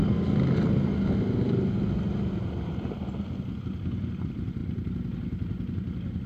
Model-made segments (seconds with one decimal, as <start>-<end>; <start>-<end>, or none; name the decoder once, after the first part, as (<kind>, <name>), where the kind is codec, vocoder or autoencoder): none